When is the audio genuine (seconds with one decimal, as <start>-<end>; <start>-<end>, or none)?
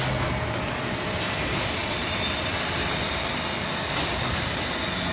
0.0-5.1